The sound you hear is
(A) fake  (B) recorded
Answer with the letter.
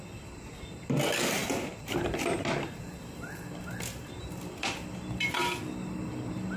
B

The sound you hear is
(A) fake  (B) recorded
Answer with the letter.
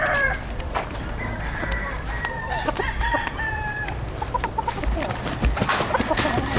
A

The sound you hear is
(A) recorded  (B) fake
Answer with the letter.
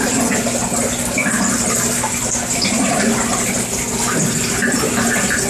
A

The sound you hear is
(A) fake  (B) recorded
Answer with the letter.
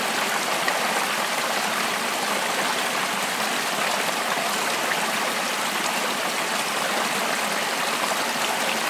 B